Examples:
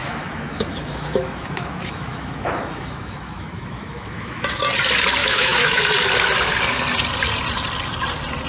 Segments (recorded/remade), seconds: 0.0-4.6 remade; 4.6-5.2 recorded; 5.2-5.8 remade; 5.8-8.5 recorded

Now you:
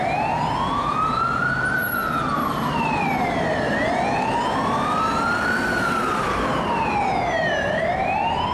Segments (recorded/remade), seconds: 0.0-8.5 recorded

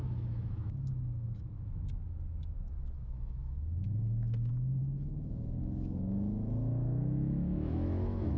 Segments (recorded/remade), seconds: 0.0-8.4 remade